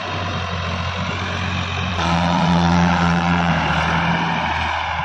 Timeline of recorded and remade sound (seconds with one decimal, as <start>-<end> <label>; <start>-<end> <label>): 0.0-1.9 recorded; 1.9-3.5 remade; 3.5-5.0 recorded